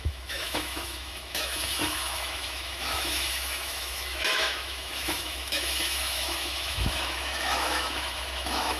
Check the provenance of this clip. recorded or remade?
remade